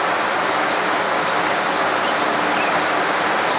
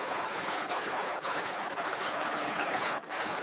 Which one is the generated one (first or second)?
second